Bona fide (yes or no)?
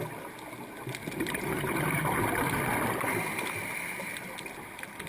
yes